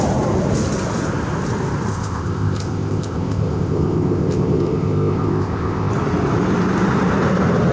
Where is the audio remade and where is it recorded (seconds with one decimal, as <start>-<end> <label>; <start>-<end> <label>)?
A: 0.0-1.9 recorded; 1.9-5.9 remade; 5.9-7.7 recorded